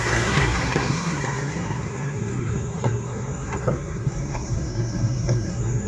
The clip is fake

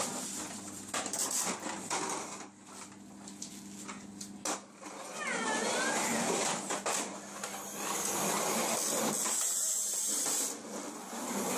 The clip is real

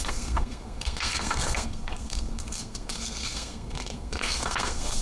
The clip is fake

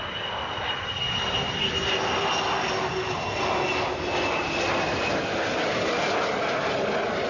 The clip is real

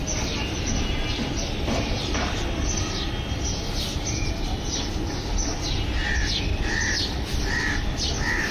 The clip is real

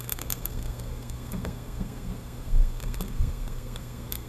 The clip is fake